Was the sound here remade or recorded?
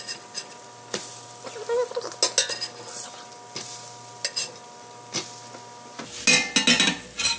recorded